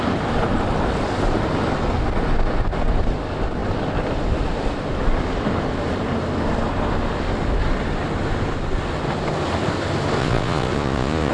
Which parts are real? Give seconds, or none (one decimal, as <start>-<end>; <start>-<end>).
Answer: 0.0-10.2